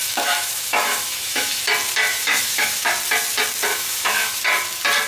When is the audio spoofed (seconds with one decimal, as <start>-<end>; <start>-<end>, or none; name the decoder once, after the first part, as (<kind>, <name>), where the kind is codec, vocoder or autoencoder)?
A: 0.0-1.6 (autoencoder, DAC-VAE); 2.1-2.9; 3.7-4.4